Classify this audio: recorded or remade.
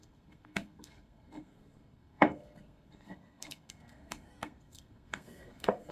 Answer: remade